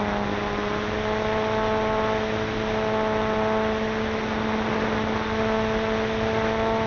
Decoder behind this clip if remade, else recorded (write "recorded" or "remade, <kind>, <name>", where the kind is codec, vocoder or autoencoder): recorded